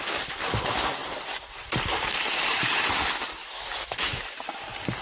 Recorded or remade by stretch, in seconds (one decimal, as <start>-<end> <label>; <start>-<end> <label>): 0.0-3.4 recorded; 3.4-4.1 remade; 4.1-5.0 recorded